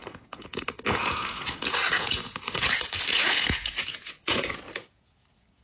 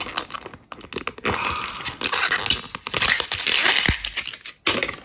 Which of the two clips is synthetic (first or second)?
first